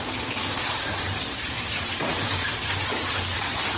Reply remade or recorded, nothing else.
remade